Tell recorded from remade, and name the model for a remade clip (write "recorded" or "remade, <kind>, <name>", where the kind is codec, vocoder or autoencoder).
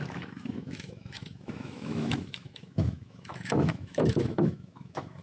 remade, autoencoder, DAC-VAE